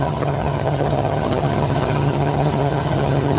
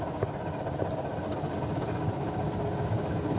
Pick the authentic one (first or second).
second